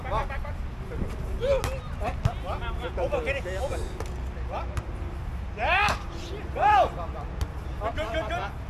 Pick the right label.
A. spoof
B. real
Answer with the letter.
B